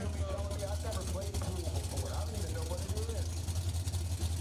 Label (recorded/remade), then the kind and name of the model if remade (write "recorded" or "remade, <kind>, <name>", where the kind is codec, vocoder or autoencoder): recorded